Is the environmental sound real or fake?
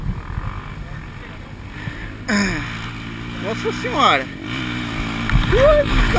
real